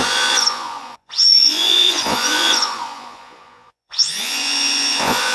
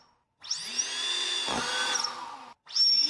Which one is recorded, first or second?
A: second